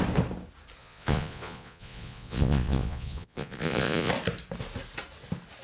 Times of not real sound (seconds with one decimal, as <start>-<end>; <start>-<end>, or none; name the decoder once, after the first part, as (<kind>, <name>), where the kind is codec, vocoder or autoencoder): 0.8-4.1 (vocoder, Vocos)